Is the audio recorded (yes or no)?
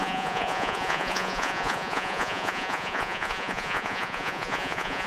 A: no